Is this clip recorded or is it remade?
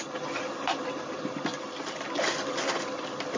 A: remade